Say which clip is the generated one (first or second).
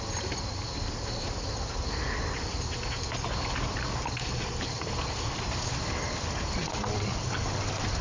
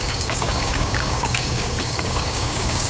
second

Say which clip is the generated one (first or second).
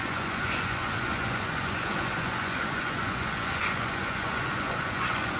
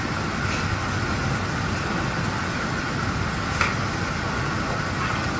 first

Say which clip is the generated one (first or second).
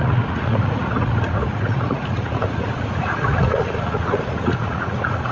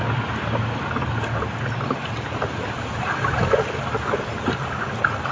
first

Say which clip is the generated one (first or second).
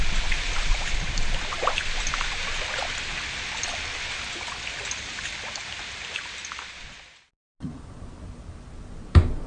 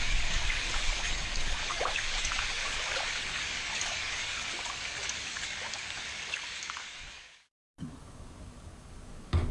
second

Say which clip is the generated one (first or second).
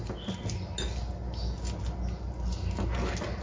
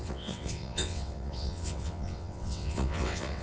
second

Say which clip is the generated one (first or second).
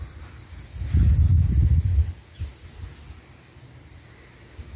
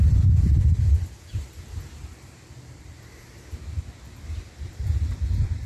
second